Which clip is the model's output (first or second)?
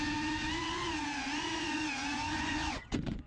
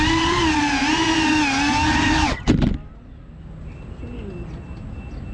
first